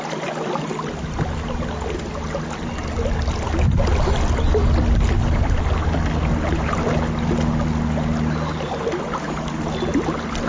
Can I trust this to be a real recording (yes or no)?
yes